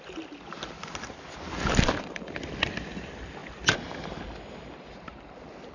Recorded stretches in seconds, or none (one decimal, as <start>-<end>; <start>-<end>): 0.0-5.7